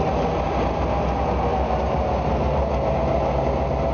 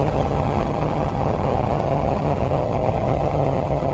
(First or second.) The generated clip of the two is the second